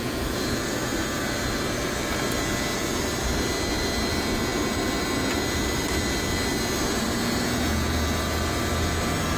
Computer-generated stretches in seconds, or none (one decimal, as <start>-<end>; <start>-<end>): none